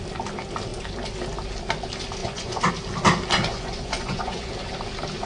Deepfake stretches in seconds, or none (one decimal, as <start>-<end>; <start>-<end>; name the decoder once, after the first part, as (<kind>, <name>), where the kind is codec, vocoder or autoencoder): 2.2-2.7 (vocoder, Vocos); 3.5-4.5

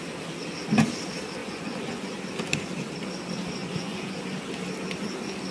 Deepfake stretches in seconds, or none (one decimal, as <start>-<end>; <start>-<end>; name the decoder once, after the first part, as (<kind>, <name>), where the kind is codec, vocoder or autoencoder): 1.4-2.1 (vocoder, Vocos); 3.6-4.2

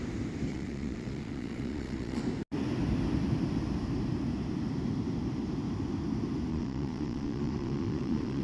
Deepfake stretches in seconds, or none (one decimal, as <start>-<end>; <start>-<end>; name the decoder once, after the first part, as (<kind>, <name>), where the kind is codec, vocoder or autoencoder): 0.5-2.2 (vocoder, Vocos); 6.5-8.4

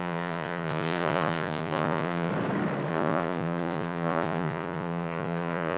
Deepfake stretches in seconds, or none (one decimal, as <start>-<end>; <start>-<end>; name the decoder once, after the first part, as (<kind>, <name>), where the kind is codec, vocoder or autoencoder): 0.0-2.3 (vocoder, Vocos); 2.9-5.8

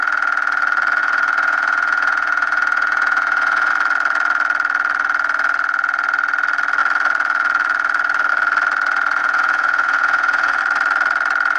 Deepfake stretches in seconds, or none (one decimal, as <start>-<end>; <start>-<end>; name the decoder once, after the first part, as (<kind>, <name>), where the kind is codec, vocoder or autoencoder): 1.0-3.7 (vocoder, Vocos); 9.2-10.6